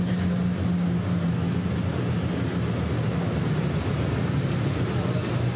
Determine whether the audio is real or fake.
real